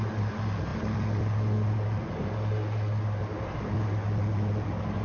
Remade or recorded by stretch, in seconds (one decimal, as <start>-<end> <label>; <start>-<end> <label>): 0.0-5.0 recorded